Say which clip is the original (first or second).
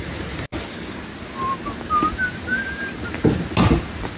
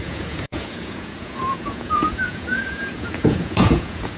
first